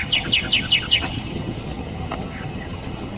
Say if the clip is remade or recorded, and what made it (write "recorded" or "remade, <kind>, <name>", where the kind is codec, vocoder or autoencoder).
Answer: remade, vocoder, HiFi-GAN